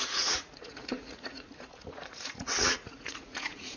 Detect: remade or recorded remade